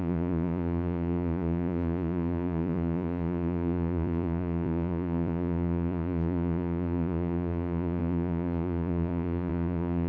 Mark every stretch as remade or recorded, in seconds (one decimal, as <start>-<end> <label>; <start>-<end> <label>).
0.0-10.1 remade